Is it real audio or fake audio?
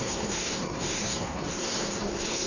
fake